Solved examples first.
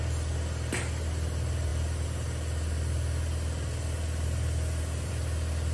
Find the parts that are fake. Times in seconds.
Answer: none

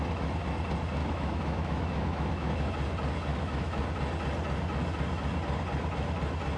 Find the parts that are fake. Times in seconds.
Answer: 1.0-2.7 (autoencoder, DAC-VAE); 3.3-3.8

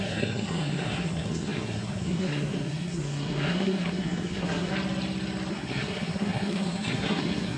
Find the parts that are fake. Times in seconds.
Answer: 0.0-4.7 (codec, SNAC); 5.5-7.6

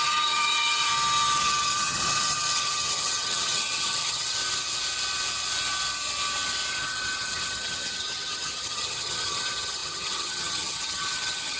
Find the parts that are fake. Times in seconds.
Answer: 0.0-0.9 (vocoder, HiFi-GAN); 1.4-4.4; 6.7-11.6

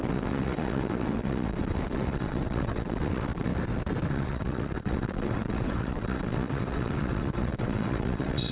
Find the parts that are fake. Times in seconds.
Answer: 0.0-3.5 (vocoder, WaveNeXt); 4.1-8.5